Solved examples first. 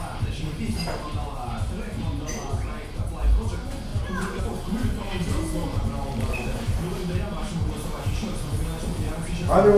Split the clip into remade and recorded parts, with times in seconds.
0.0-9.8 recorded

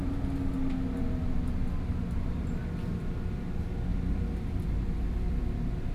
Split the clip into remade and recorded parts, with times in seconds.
0.0-1.6 recorded; 1.6-3.2 remade; 3.2-3.9 recorded; 3.9-5.9 remade